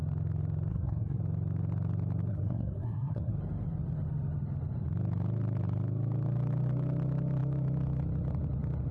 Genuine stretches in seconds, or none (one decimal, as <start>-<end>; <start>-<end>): 0.0-0.7; 1.2-2.3; 3.3-8.9